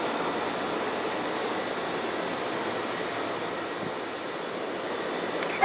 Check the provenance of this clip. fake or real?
real